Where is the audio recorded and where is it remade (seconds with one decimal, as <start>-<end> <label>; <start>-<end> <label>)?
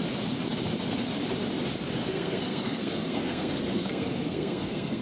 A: 0.0-2.0 recorded; 2.0-5.0 remade